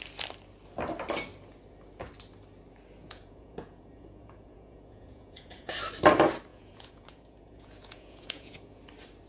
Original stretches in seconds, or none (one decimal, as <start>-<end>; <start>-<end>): 0.0-3.0; 5.7-6.5; 8.8-9.3